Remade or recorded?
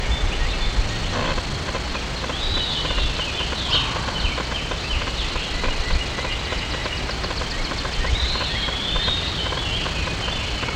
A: recorded